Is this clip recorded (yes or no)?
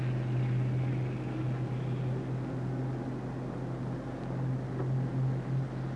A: yes